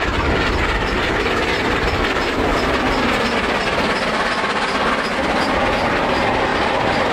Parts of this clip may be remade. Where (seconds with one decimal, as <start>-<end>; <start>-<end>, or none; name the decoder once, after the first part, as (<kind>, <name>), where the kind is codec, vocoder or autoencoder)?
0.0-2.5 (vocoder, BigVGAN v2); 5.6-6.5